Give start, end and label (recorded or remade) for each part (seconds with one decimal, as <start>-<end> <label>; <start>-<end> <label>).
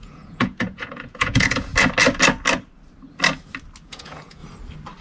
0.0-1.7 remade; 1.7-3.8 recorded; 3.8-4.4 remade; 4.4-5.0 recorded